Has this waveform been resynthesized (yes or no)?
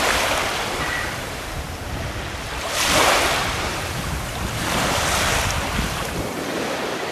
yes